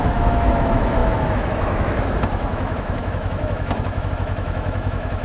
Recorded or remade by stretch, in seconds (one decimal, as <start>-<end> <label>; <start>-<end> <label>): 0.0-5.2 remade